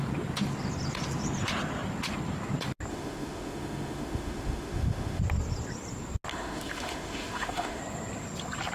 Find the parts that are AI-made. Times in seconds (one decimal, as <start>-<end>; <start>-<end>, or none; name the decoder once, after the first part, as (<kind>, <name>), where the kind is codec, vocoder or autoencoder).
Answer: 2.9-5.2 (autoencoder, DAC-VAE); 6.3-7.8